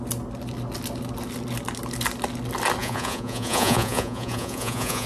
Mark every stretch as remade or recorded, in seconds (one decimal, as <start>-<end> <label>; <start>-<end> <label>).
0.0-2.8 recorded; 2.8-5.1 remade